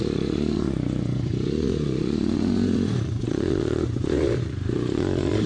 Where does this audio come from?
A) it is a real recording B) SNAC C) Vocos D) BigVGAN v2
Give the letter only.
C